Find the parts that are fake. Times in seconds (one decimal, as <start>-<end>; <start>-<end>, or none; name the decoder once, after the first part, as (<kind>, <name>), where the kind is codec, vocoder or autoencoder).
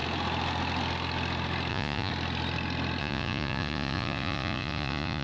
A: 1.7-2.1 (vocoder, Vocos); 3.0-5.2